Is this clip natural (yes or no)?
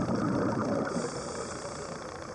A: yes